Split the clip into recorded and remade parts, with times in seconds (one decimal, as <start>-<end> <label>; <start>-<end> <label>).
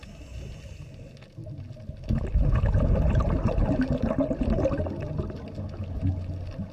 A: 0.0-6.7 recorded